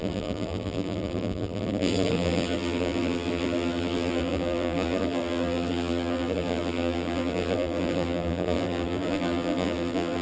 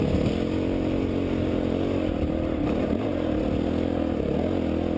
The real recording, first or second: second